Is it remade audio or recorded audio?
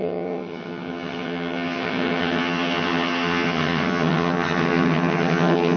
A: remade